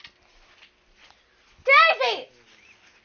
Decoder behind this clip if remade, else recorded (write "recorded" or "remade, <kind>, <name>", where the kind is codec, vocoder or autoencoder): recorded